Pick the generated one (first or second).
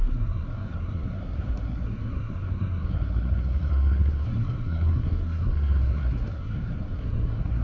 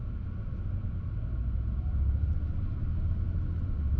first